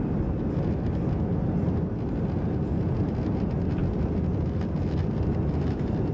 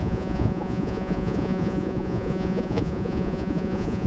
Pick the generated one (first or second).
second